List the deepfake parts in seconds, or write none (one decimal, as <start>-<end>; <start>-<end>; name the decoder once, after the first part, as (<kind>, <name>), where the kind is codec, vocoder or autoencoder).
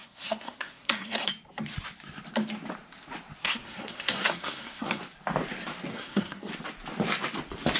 0.0-1.3 (codec, SNAC); 3.4-5.0; 5.9-6.5